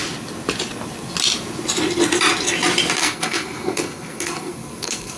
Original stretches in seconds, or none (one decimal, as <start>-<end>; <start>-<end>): 0.0-3.0